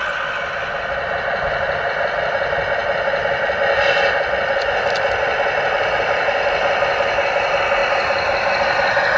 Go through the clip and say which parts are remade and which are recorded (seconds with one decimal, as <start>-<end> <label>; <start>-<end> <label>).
0.0-9.2 recorded